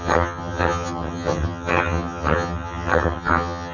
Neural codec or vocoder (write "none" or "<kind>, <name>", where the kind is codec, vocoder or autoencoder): vocoder, HiFi-GAN